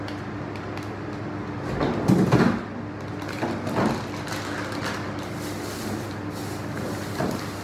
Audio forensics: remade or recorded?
recorded